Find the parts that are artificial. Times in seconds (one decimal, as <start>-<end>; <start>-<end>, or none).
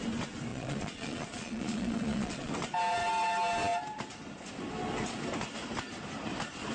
0.5-2.5